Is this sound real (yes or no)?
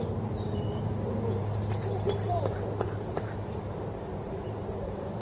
no